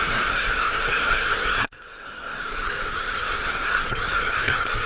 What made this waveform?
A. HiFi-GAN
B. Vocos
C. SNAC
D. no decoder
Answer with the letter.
C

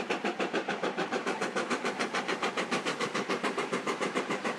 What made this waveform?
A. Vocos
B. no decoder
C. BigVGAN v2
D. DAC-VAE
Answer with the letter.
C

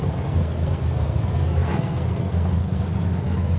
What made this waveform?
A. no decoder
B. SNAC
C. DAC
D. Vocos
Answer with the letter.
B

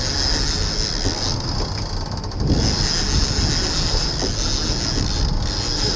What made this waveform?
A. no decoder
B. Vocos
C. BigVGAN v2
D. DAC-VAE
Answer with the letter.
A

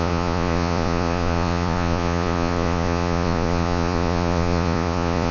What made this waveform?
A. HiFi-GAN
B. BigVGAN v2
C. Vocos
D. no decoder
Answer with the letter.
C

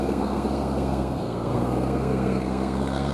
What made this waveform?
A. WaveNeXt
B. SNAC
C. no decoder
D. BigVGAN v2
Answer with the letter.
B